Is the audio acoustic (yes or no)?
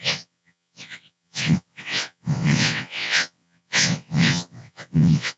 no